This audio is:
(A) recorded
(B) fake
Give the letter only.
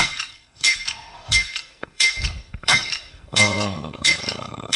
B